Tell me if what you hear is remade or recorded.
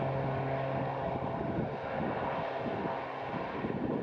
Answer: recorded